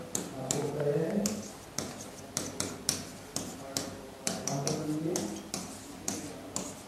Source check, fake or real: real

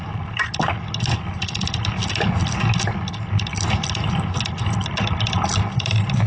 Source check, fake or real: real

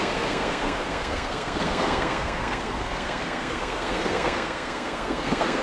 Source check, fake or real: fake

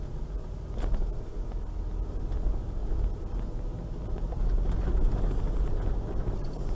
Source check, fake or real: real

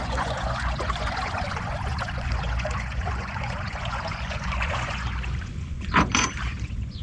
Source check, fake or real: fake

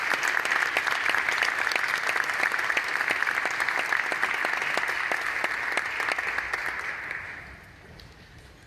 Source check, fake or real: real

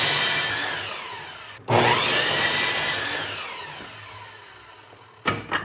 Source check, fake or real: real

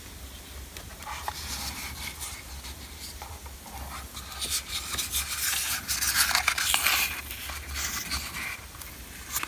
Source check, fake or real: real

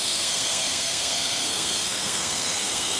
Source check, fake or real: fake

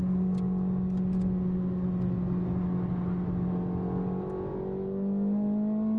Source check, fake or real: real